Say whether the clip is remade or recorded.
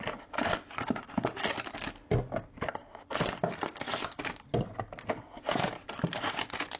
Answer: recorded